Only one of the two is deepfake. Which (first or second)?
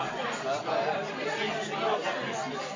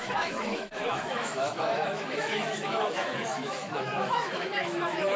second